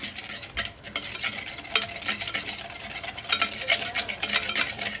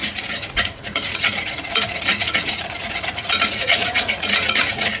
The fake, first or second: second